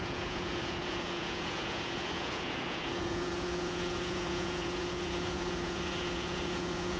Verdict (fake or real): fake